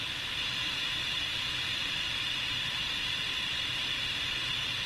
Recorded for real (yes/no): no